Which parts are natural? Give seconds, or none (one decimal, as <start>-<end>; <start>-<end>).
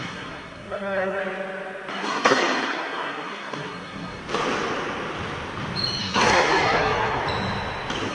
1.2-1.9; 4.2-6.0; 7.2-8.1